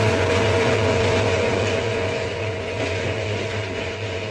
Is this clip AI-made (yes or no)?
yes